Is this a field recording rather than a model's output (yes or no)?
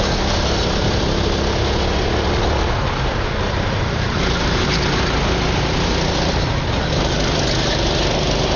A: yes